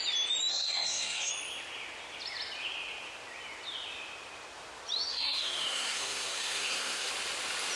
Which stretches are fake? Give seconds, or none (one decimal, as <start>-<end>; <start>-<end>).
0.5-1.3; 5.1-7.1